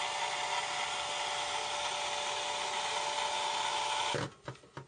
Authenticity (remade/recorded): recorded